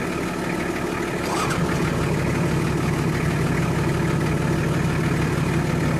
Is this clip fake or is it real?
real